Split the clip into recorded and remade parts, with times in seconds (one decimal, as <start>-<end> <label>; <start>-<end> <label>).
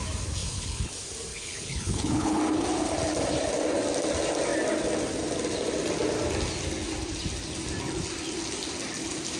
0.0-0.4 recorded; 0.4-0.9 remade; 0.9-1.3 recorded; 1.3-2.4 remade; 2.4-9.4 recorded